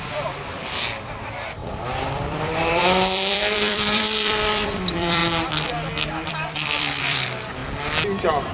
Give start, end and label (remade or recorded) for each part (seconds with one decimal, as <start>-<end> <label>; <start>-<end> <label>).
0.0-5.2 remade; 5.2-6.3 recorded; 6.3-7.6 remade; 7.6-8.5 recorded